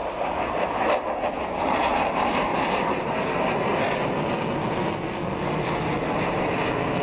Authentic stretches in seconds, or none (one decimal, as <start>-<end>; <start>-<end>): 0.0-1.3; 2.5-7.0